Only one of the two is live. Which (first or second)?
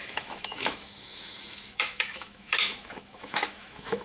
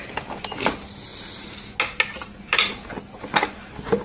second